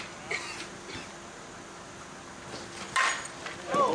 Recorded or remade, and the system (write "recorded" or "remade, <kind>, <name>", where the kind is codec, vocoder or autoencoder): recorded